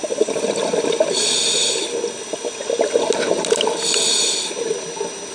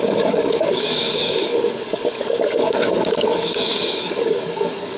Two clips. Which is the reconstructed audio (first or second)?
second